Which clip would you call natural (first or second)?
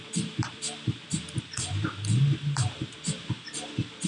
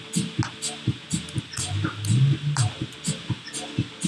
second